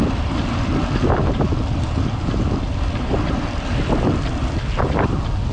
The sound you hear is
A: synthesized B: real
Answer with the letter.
A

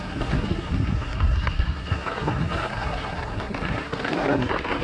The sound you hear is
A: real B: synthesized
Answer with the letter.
B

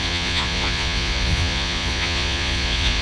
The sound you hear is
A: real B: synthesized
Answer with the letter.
B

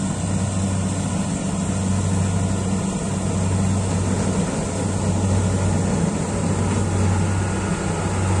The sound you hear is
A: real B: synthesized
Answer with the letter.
A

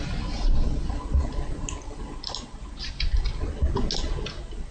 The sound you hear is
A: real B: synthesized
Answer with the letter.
A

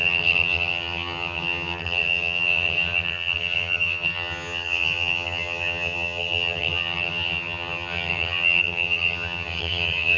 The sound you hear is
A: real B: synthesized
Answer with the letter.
B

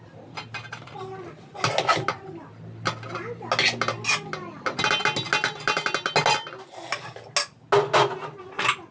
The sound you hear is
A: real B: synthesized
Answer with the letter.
A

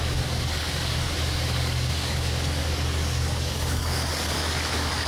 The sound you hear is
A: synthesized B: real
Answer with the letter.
A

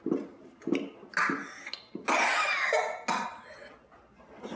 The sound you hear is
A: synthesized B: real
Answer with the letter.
B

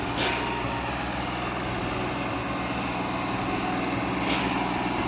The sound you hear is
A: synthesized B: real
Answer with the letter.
B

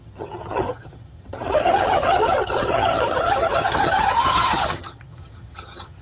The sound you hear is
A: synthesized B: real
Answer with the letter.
A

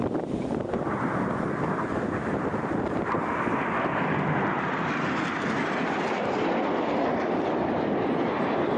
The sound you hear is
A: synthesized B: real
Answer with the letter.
A